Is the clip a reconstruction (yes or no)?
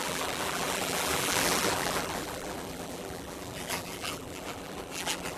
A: yes